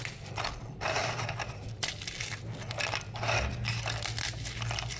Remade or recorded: recorded